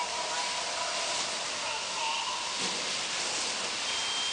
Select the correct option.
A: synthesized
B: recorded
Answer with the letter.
B